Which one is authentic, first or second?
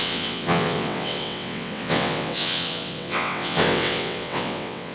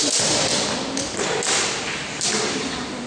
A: second